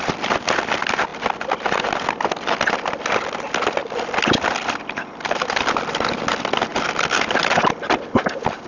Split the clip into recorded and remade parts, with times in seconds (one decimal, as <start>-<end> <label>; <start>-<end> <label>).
0.0-8.7 recorded